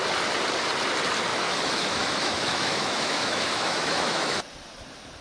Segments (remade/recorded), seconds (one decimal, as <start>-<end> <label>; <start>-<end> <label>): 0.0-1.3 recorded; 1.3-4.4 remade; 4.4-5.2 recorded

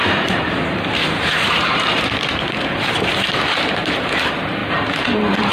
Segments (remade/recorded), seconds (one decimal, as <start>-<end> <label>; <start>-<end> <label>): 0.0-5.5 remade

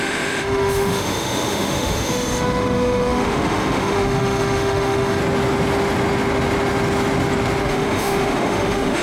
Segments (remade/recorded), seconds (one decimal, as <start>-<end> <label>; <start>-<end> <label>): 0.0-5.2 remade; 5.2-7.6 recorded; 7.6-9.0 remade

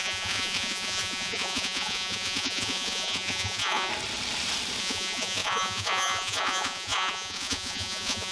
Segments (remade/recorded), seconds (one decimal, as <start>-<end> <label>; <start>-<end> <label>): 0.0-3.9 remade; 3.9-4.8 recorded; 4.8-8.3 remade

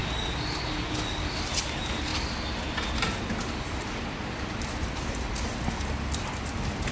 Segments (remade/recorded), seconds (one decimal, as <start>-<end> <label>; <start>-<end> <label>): 0.0-6.9 recorded

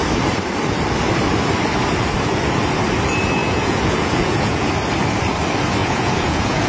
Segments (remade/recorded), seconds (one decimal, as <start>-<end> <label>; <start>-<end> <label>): 0.0-3.4 recorded; 3.4-4.7 remade; 4.7-5.8 recorded; 5.8-6.7 remade